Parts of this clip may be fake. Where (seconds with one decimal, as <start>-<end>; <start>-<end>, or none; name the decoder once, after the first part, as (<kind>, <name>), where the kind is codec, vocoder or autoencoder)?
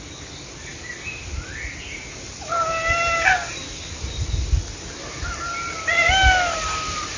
none